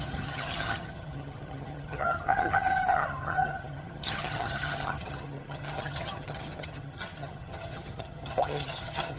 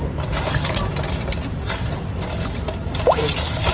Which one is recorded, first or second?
second